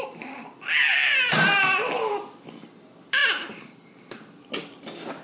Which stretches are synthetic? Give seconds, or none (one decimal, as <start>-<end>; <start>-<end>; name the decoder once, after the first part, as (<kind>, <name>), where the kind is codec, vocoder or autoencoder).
0.0-0.9 (vocoder, BigVGAN v2); 1.6-5.2